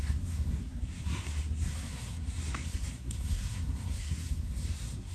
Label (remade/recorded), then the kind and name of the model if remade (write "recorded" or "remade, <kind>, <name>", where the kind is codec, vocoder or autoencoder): remade, codec, SNAC